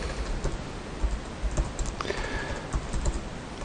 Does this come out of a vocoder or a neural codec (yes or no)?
no